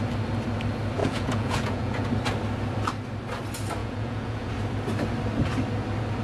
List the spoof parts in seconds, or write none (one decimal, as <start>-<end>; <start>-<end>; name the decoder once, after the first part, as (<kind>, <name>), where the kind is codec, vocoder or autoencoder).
1.0-2.1 (vocoder, Vocos); 3.8-4.5